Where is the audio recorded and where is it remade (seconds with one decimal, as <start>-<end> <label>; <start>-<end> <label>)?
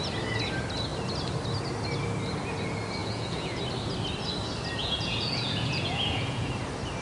0.0-3.0 recorded; 3.0-3.6 remade; 3.6-4.8 recorded; 4.8-6.5 remade; 6.5-7.0 recorded